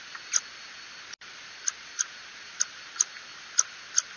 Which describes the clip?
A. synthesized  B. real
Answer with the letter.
B